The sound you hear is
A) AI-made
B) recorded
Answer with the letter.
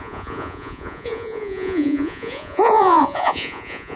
A